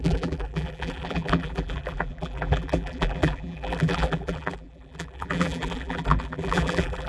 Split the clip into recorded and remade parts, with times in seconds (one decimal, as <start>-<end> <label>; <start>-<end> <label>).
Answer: 0.0-7.1 remade